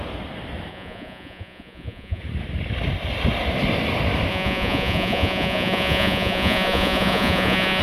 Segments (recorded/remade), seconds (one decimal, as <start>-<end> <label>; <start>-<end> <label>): 0.0-0.7 recorded; 0.7-2.2 remade; 2.2-4.3 recorded; 4.3-7.8 remade